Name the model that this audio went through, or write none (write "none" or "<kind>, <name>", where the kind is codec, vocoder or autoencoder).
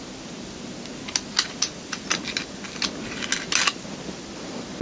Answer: none